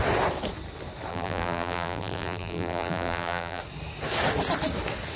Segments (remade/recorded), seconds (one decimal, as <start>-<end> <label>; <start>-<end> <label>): 0.0-1.1 recorded; 1.1-3.6 remade; 3.6-5.2 recorded